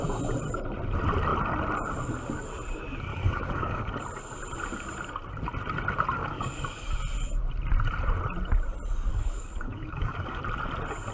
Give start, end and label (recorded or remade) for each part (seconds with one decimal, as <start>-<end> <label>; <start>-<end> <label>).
0.0-3.1 recorded; 3.1-3.9 remade; 3.9-6.2 recorded; 6.2-6.9 remade; 6.9-9.1 recorded; 9.1-10.4 remade; 10.4-11.1 recorded